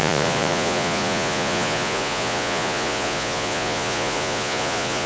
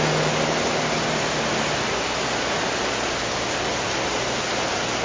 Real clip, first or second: second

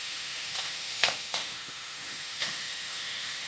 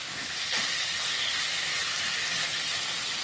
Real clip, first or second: second